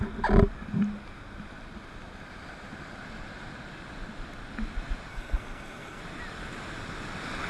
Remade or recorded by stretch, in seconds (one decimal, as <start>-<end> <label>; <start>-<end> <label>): 0.0-5.1 recorded; 5.1-6.0 remade; 6.0-7.5 recorded